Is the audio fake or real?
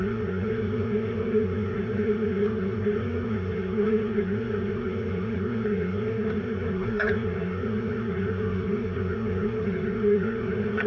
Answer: fake